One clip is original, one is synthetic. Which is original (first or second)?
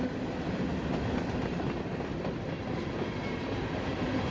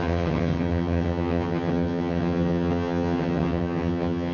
first